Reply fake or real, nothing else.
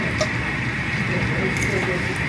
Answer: real